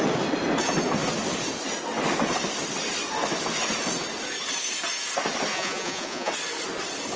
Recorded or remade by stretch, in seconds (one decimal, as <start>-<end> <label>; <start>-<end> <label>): 0.0-5.5 recorded; 5.5-6.3 remade; 6.3-7.2 recorded

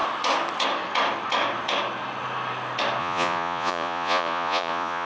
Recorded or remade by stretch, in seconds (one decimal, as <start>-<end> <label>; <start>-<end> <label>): 0.0-3.0 recorded; 3.0-5.0 remade

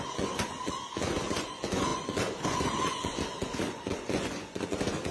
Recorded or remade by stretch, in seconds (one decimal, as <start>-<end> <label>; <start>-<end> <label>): 0.0-5.1 remade

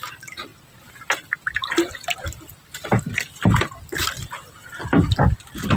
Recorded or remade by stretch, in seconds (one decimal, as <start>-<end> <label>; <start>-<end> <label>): 0.0-5.8 recorded

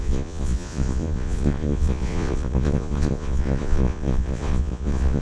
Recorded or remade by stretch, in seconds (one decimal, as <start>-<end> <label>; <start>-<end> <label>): 0.0-5.2 remade

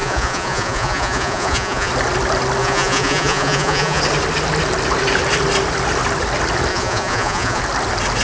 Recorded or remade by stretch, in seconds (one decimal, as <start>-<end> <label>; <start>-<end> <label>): 0.0-1.9 remade; 1.9-2.6 recorded; 2.6-4.0 remade; 4.0-6.7 recorded; 6.7-7.6 remade; 7.6-8.2 recorded